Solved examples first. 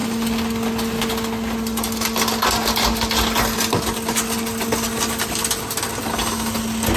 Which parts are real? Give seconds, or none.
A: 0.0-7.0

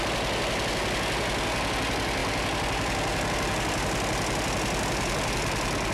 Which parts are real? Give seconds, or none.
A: 0.0-5.9

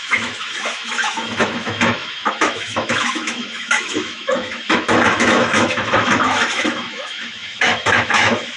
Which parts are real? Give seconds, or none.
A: none

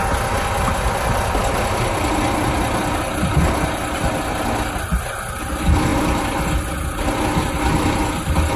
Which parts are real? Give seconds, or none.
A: 0.0-8.6